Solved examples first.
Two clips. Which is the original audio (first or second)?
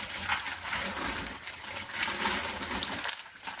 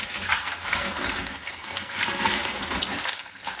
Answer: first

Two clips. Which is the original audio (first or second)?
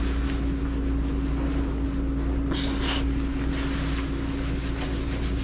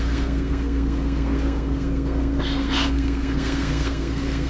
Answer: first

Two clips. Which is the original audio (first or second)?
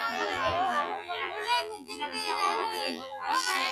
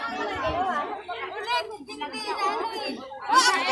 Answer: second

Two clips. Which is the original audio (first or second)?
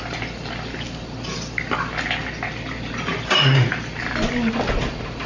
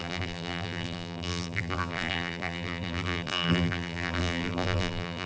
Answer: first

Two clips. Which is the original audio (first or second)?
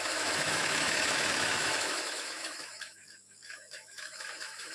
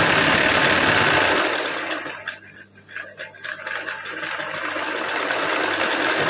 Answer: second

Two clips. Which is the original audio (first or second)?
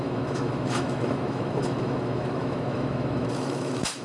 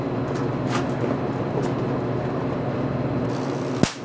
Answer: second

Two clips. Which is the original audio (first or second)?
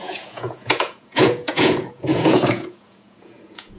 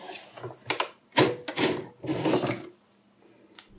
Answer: second